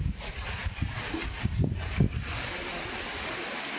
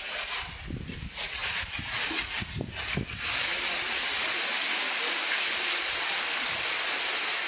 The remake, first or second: first